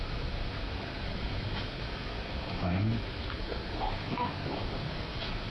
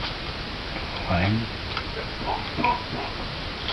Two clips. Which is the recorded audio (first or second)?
second